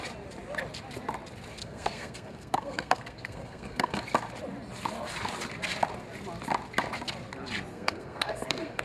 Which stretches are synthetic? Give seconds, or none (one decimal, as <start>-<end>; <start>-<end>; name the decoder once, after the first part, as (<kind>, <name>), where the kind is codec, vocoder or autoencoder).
1.6-4.0 (codec, SNAC); 7.7-8.8